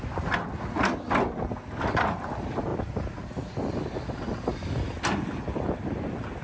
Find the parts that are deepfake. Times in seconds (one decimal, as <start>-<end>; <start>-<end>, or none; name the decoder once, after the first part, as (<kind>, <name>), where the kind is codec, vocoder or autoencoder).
none